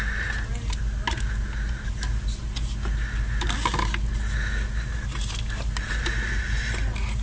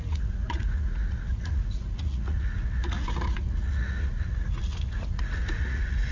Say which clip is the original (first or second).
first